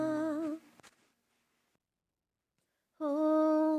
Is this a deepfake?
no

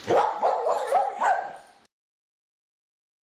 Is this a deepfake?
no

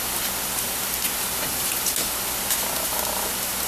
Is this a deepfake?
no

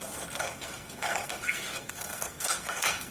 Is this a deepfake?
yes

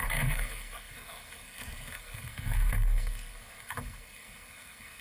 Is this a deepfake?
yes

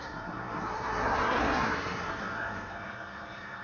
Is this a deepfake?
yes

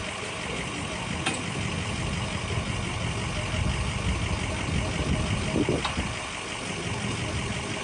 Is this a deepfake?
no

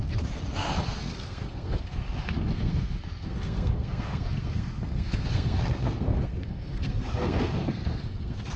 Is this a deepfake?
yes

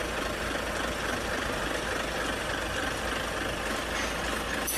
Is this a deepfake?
no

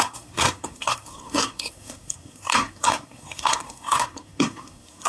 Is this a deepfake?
yes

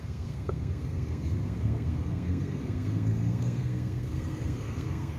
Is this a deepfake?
yes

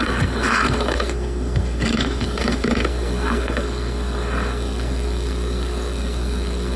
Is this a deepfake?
yes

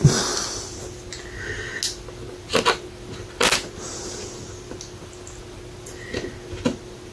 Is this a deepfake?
no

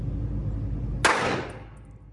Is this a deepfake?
no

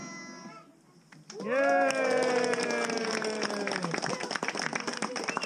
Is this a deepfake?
no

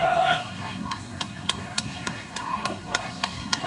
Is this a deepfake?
yes